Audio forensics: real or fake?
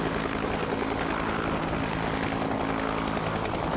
real